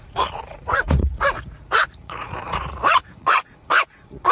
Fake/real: fake